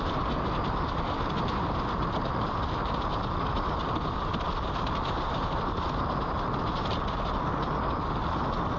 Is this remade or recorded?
recorded